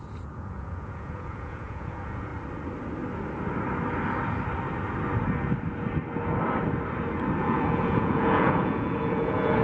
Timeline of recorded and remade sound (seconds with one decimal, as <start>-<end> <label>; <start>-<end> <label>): 0.0-2.3 remade; 2.3-7.4 recorded; 7.4-9.6 remade